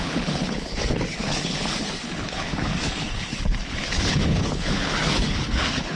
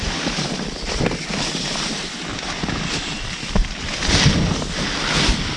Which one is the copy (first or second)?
first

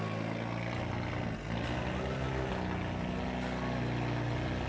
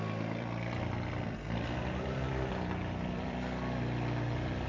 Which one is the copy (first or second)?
second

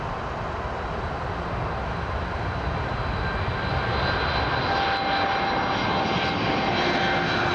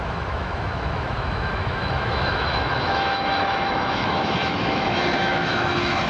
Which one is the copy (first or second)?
second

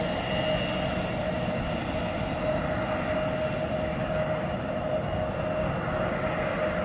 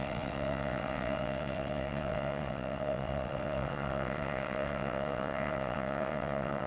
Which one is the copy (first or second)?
second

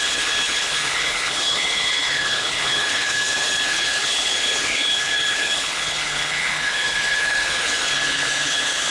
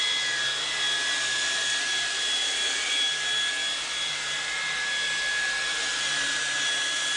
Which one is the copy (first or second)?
first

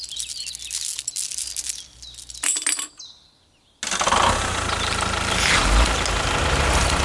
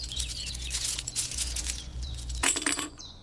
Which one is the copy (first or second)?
second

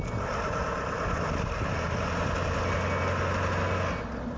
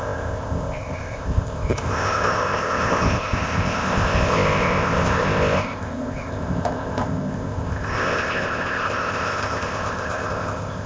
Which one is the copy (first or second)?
second